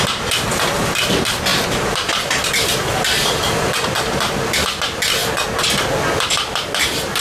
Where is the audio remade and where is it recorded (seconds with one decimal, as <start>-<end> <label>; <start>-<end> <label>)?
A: 0.0-5.2 remade; 5.2-7.2 recorded